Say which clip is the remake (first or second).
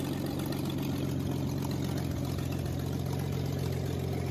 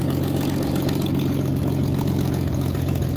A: second